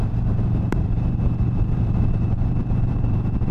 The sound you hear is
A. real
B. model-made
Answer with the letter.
B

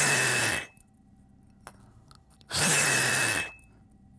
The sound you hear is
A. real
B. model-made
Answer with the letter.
A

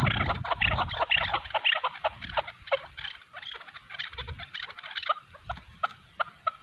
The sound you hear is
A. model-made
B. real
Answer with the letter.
B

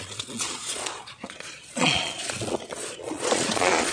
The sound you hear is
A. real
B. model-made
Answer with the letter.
B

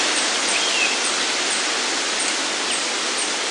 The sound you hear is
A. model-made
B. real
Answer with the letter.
B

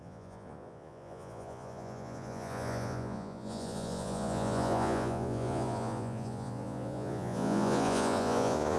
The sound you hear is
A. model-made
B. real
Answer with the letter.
A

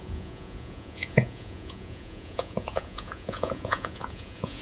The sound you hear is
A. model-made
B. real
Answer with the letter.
A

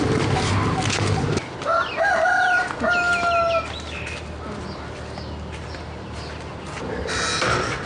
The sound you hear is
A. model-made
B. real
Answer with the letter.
B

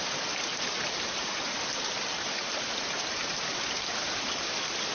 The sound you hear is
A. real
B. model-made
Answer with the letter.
B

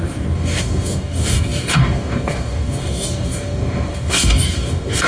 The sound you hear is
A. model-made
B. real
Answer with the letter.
A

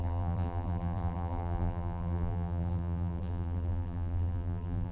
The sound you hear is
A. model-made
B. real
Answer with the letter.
A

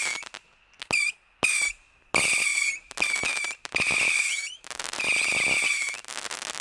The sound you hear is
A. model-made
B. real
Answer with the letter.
B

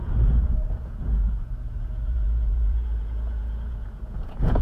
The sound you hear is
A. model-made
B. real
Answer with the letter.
A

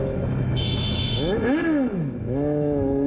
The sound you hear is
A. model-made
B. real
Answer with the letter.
A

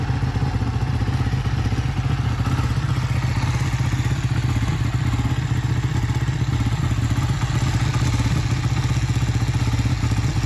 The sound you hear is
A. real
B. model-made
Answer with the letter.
A